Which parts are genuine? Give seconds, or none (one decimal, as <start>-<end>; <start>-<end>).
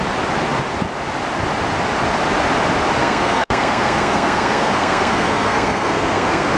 0.0-3.0